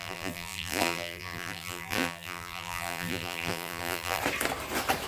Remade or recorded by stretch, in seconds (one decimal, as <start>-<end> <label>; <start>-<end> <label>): 0.0-4.2 remade; 4.2-5.1 recorded